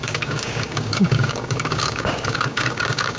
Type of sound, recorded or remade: remade